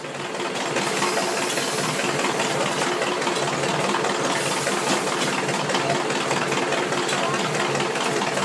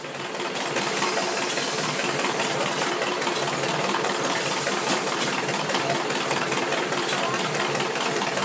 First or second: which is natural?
first